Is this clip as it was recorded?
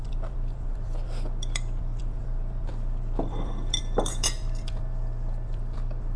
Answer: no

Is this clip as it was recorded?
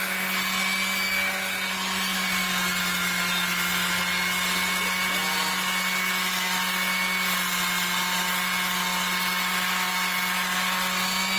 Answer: yes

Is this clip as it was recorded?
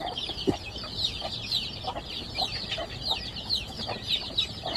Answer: no